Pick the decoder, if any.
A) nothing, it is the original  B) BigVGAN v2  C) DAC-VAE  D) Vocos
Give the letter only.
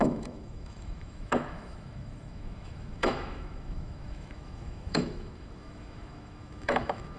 C